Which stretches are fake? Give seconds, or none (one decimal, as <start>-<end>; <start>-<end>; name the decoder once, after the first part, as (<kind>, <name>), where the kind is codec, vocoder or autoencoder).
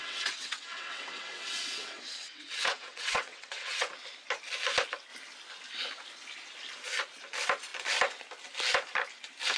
0.0-3.9 (vocoder, WaveNeXt)